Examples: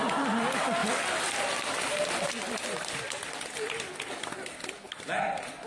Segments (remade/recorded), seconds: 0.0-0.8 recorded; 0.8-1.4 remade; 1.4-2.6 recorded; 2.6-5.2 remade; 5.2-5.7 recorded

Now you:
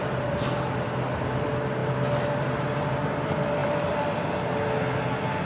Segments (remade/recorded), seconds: 0.0-3.6 recorded; 3.6-4.6 remade; 4.6-5.5 recorded